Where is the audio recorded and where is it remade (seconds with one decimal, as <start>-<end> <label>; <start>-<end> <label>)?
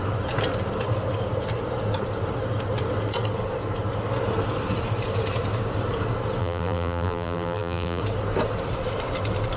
0.0-6.4 recorded; 6.4-8.0 remade; 8.0-9.6 recorded